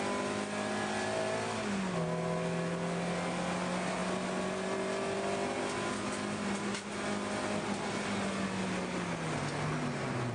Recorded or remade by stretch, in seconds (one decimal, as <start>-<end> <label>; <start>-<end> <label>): 0.0-10.3 recorded